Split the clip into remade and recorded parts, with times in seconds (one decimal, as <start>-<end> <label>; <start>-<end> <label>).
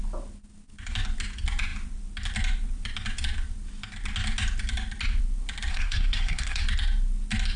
0.0-5.7 recorded; 5.7-6.6 remade; 6.6-7.6 recorded